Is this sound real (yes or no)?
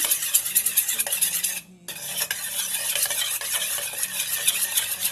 yes